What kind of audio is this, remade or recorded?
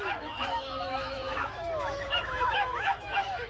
remade